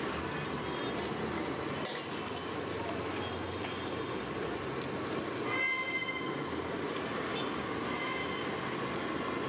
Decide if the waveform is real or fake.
real